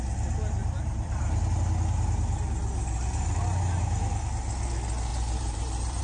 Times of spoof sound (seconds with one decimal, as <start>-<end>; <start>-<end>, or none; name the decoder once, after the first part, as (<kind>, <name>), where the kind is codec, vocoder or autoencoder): 0.6-1.2 (vocoder, BigVGAN v2); 5.1-6.0